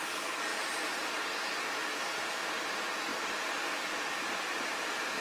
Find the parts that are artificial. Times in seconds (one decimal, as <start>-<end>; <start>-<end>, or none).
none